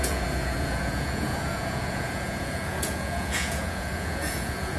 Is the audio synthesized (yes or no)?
yes